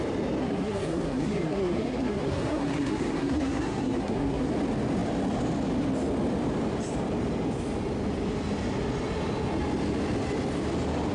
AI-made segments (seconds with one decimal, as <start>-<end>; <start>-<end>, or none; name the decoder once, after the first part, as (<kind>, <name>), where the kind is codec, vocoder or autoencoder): 0.4-4.5 (codec, SNAC)